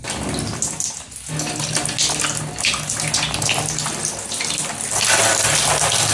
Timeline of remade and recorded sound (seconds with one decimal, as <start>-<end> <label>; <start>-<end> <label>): 0.0-6.1 recorded